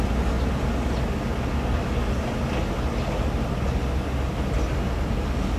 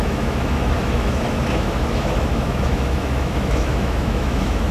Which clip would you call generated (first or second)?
second